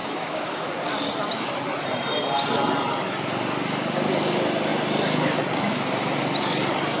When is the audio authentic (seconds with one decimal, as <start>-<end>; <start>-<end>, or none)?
0.7-7.0